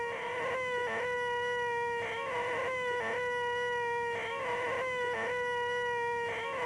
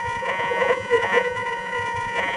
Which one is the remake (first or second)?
second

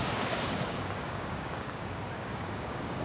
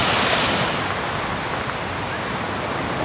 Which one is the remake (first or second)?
first